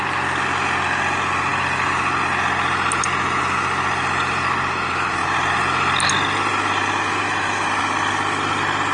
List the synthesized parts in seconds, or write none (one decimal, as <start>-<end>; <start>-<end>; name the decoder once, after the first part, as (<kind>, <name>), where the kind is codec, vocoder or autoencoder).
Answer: none